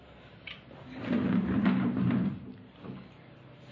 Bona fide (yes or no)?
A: no